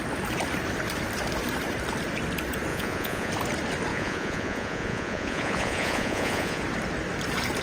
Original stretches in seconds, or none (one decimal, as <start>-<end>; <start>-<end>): 0.0-2.7; 3.3-3.9; 6.6-7.6